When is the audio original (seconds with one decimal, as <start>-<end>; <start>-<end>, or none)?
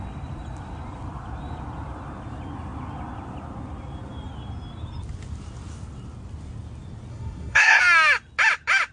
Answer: 0.0-7.1; 7.8-8.9